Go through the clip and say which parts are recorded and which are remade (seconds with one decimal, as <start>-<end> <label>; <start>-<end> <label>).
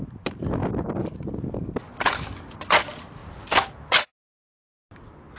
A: 0.0-5.4 recorded